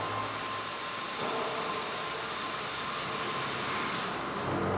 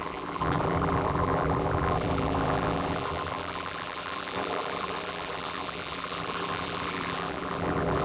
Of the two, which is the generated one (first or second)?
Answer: second